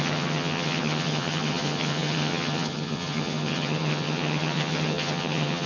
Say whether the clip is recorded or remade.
remade